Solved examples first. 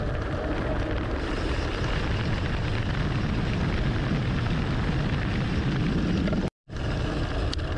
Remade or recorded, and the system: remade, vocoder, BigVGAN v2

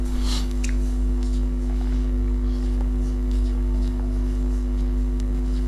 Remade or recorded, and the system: remade, codec, DAC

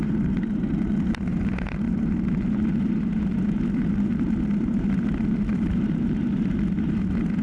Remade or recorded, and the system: remade, vocoder, BigVGAN v2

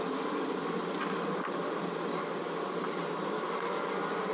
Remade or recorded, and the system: recorded